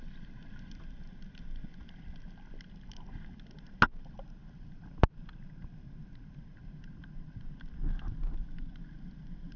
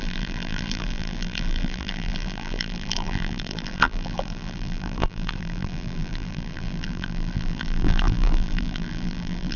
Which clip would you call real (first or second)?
first